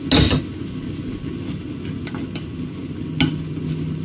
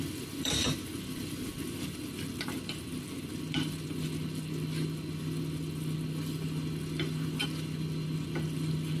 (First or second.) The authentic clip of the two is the first